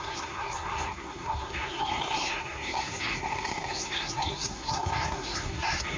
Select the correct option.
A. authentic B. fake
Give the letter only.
B